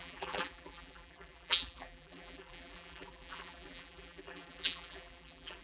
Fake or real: fake